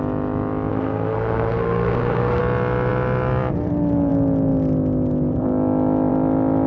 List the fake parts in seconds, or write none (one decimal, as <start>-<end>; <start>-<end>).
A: 0.7-2.4